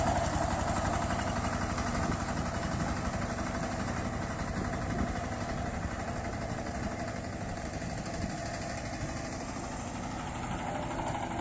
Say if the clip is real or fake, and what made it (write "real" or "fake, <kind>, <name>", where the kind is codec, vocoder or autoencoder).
real